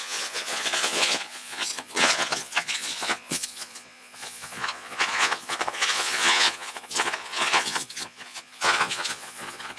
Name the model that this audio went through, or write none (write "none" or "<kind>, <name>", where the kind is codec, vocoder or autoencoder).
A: vocoder, Vocos